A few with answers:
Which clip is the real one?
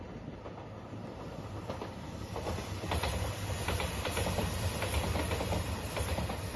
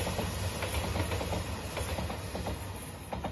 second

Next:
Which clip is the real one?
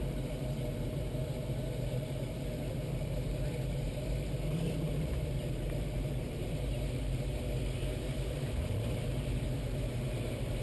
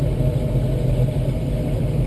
second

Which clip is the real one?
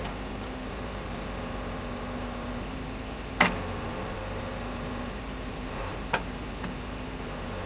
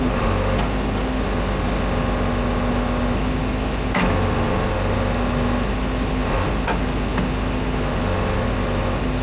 second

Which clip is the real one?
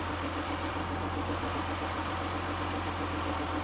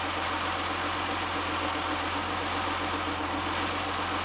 second